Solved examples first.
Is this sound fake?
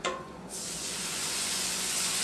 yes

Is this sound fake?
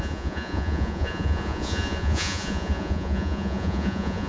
yes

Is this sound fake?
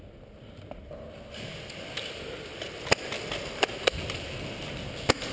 no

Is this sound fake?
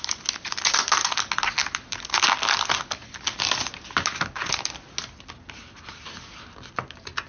no